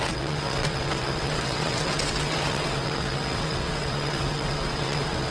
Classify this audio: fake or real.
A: fake